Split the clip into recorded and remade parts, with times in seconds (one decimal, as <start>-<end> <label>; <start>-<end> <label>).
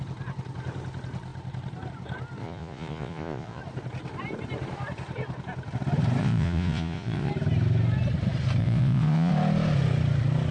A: 0.0-2.4 recorded; 2.4-3.6 remade; 3.6-6.2 recorded; 6.2-7.3 remade; 7.3-8.6 recorded; 8.6-9.3 remade; 9.3-10.5 recorded